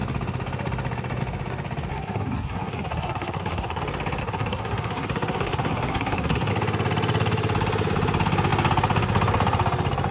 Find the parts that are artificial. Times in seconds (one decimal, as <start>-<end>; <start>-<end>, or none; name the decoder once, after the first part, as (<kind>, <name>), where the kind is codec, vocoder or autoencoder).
1.9-3.8 (codec, SNAC); 4.2-6.5